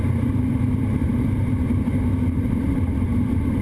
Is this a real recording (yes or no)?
no